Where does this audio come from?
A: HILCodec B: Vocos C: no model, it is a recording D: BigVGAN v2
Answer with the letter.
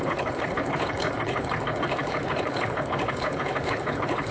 A